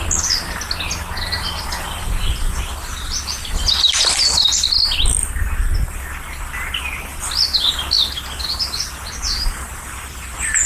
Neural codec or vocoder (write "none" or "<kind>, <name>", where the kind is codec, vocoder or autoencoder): none